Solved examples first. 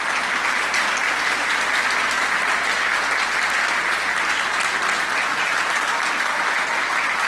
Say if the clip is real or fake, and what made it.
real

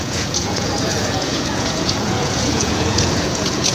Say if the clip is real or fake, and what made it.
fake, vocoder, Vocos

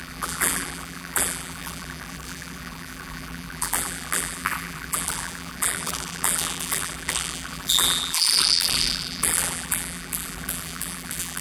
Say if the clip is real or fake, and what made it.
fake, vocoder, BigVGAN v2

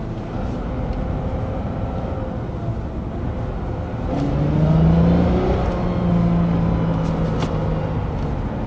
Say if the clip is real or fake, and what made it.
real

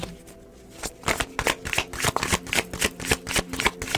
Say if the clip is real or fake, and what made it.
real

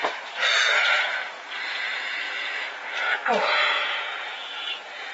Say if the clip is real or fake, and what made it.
fake, vocoder, Vocos